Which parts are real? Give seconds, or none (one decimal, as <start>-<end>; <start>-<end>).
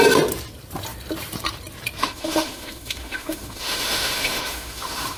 0.0-2.0